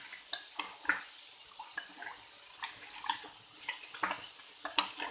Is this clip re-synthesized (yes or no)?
no